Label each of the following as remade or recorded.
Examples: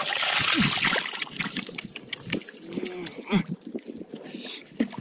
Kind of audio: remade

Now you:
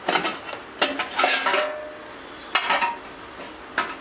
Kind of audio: recorded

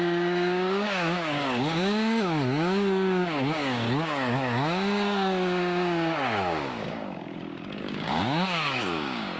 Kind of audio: remade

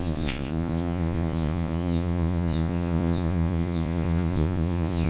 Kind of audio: remade